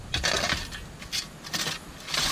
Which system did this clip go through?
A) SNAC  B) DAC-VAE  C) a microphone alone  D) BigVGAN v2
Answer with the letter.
C